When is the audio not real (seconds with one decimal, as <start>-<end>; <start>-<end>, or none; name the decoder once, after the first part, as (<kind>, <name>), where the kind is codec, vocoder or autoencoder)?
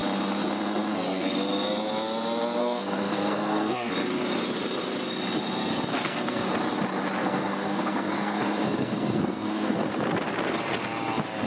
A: 2.6-3.9 (codec, SNAC); 5.9-6.5; 7.2-9.9